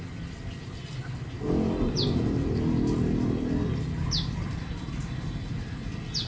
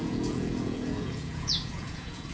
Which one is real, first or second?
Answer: first